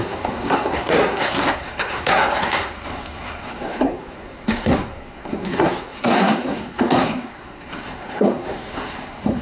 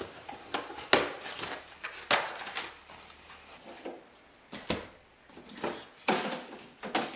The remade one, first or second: first